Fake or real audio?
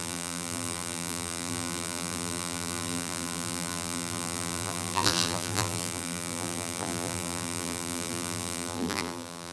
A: fake